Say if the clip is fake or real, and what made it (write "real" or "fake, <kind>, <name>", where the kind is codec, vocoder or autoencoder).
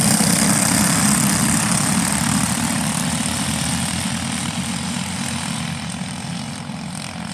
real